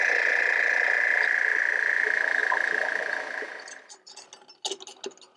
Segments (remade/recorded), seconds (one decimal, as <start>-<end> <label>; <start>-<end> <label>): 0.0-5.4 recorded